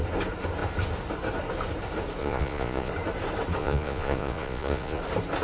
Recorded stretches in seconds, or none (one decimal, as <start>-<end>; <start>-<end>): 0.0-2.2; 2.9-3.6; 5.0-5.4